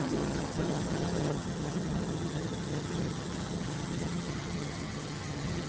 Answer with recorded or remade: remade